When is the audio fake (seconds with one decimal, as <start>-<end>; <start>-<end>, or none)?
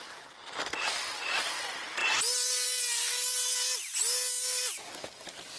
none